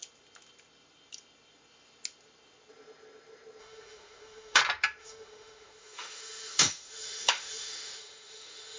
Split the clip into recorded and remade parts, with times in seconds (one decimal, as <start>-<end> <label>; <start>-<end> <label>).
0.0-3.6 recorded; 3.6-4.6 remade; 4.6-5.0 recorded; 5.0-8.8 remade

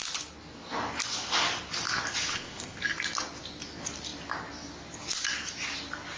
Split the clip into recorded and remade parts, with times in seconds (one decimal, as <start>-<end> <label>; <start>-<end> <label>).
0.0-2.3 recorded; 2.3-2.8 remade; 2.8-6.2 recorded

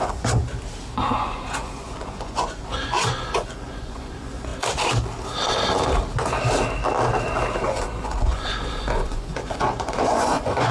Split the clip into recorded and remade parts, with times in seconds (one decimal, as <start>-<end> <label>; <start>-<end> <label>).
0.0-0.4 remade; 0.4-1.0 recorded; 1.0-4.5 remade; 4.5-7.6 recorded; 7.6-10.7 remade

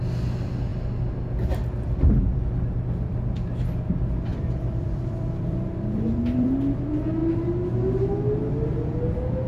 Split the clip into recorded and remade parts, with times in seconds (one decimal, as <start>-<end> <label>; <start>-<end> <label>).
0.0-4.3 recorded; 4.3-6.5 remade; 6.5-9.5 recorded

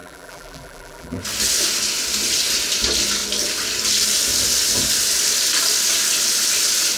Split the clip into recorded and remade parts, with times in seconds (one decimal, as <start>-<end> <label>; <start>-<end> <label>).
0.0-1.2 remade; 1.2-7.0 recorded

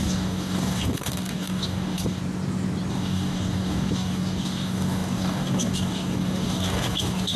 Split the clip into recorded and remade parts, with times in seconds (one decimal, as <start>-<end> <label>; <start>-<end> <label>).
0.0-2.2 remade; 2.2-2.9 recorded; 2.9-7.4 remade

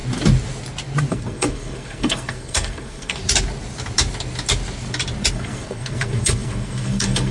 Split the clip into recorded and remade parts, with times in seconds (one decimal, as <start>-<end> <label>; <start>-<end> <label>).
0.0-1.1 recorded; 1.1-3.2 remade; 3.2-5.3 recorded; 5.3-7.3 remade